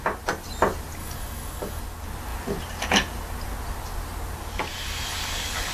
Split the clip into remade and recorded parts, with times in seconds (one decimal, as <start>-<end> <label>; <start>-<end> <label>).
0.0-1.0 recorded; 1.0-1.8 remade; 1.8-4.7 recorded; 4.7-5.7 remade